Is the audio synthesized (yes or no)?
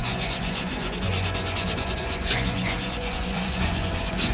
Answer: yes